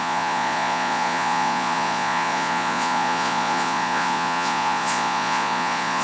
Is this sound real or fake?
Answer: fake